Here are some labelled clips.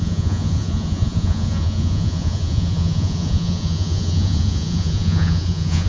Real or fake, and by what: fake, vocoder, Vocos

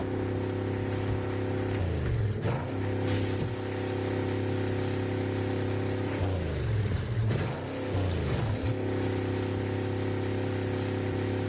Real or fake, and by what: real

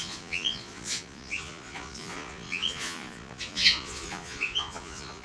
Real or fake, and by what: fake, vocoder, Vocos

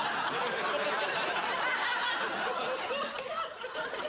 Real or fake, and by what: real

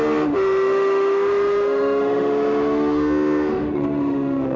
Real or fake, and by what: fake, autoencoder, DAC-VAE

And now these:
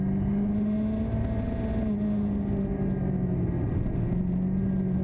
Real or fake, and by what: real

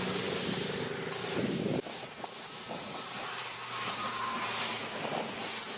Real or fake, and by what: real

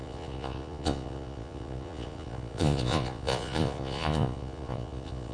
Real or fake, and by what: fake, vocoder, Vocos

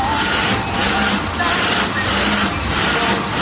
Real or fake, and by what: real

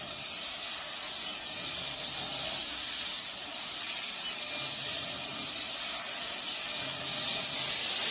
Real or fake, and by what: real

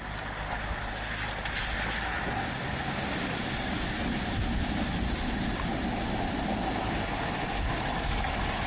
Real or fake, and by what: real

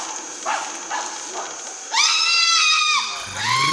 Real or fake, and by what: real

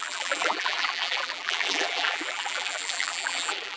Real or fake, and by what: fake, vocoder, BigVGAN v2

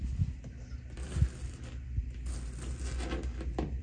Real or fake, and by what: real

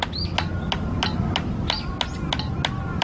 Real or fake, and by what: real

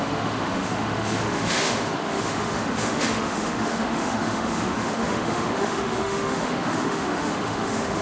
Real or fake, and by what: fake, autoencoder, DAC-VAE